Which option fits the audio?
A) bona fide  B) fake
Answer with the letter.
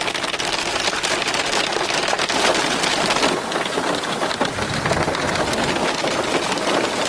A